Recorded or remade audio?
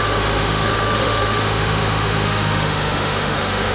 remade